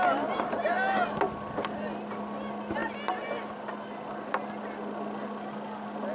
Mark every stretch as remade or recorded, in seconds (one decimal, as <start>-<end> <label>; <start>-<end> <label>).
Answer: 0.0-6.1 recorded